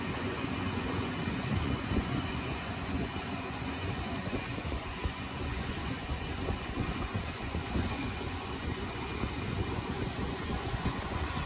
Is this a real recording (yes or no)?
no